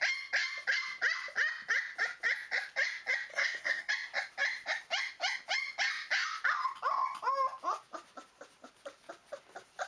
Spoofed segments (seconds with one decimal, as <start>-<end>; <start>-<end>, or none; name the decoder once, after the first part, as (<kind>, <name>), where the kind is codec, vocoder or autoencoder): 3.3-3.9 (codec, SNAC)